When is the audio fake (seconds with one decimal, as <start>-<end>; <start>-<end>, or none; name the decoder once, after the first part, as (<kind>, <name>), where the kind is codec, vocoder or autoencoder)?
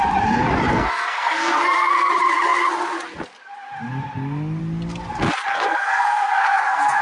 0.7-2.1 (codec, SNAC); 5.5-7.0